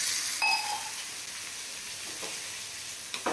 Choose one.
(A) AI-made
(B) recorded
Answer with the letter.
B